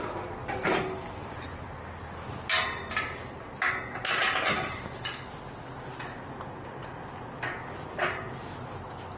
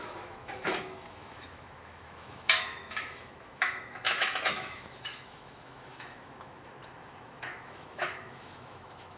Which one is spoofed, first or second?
second